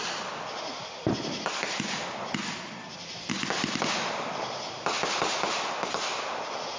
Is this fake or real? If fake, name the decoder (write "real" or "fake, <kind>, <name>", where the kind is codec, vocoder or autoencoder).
real